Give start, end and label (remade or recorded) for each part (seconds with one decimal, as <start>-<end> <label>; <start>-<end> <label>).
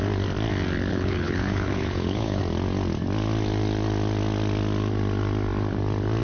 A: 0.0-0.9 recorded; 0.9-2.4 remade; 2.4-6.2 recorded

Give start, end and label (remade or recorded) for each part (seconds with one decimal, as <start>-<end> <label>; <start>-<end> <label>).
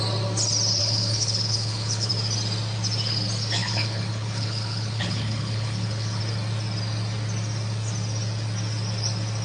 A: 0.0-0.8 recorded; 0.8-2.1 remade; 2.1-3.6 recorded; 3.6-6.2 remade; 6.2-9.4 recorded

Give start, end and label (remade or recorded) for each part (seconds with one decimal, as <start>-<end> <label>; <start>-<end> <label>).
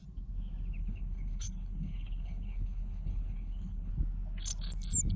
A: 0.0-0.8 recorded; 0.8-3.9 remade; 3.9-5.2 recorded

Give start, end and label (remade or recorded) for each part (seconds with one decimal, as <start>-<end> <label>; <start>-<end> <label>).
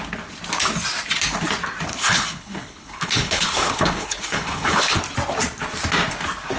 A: 0.0-1.9 recorded; 1.9-5.0 remade; 5.0-6.6 recorded